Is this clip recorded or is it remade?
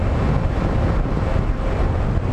recorded